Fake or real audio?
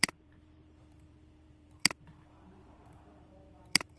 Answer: fake